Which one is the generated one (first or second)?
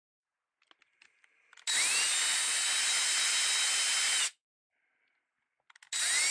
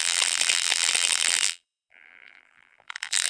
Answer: second